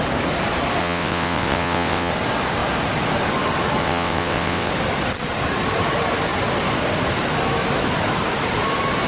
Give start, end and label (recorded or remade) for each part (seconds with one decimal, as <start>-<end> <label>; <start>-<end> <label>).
0.0-0.8 recorded; 0.8-2.1 remade; 2.1-3.8 recorded; 3.8-4.7 remade; 4.7-9.1 recorded